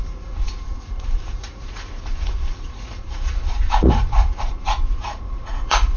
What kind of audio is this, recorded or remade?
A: remade